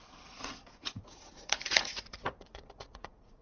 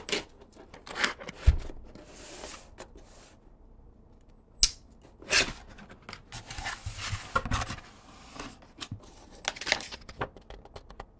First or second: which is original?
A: second